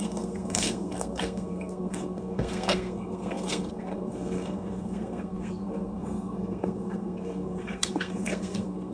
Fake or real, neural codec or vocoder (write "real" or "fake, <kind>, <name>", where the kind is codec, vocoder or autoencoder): fake, codec, SNAC